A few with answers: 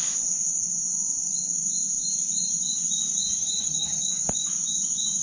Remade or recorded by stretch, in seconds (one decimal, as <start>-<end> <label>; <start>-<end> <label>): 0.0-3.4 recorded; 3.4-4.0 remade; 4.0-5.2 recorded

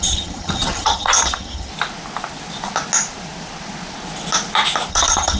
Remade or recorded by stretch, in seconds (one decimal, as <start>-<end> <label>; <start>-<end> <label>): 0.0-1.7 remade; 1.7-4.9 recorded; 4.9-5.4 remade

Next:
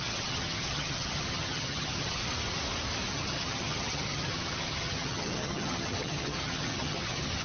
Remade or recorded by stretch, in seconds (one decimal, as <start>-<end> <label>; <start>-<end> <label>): 0.0-2.2 remade; 2.2-3.1 recorded; 3.1-7.4 remade